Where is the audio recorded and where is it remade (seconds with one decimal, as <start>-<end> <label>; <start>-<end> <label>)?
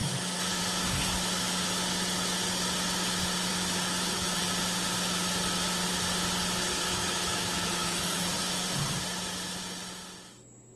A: 0.0-0.6 remade; 0.6-3.5 recorded; 3.5-4.4 remade; 4.4-6.8 recorded; 6.8-8.2 remade; 8.2-10.8 recorded